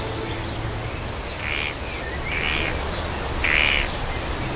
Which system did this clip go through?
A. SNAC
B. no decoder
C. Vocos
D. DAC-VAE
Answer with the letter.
B